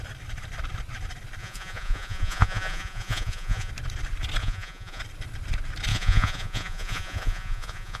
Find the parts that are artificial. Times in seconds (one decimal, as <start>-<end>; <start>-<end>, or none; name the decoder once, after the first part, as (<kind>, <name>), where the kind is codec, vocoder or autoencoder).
1.4-3.7 (vocoder, Vocos); 4.4-5.0; 5.9-8.0